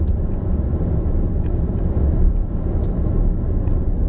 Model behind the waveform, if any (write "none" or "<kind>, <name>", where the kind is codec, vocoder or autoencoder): none